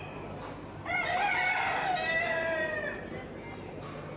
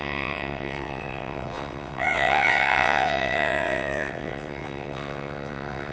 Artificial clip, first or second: second